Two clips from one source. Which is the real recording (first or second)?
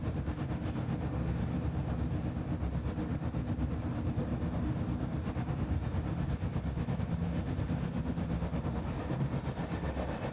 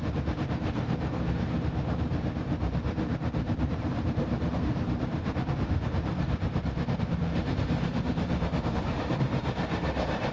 first